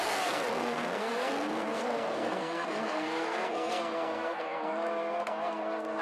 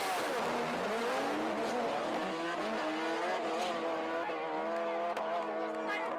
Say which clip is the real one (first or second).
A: second